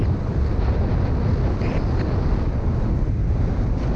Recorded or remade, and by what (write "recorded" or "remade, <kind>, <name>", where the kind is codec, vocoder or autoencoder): recorded